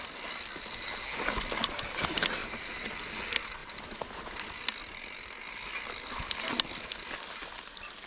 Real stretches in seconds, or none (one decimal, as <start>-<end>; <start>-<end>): 0.0-2.4; 3.0-3.6; 6.3-8.1